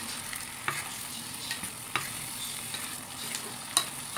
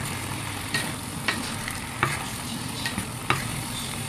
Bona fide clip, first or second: first